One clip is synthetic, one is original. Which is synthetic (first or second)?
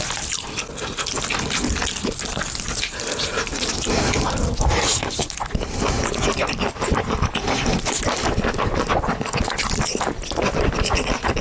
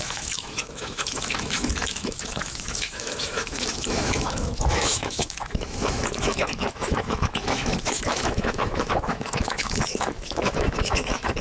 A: second